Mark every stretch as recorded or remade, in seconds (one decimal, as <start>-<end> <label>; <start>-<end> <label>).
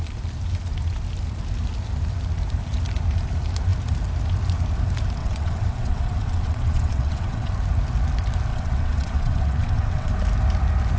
0.0-5.2 recorded; 5.2-7.5 remade; 7.5-8.5 recorded; 8.5-10.1 remade; 10.1-11.0 recorded